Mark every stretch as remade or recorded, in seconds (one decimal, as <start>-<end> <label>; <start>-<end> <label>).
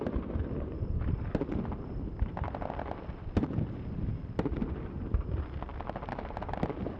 0.0-7.0 recorded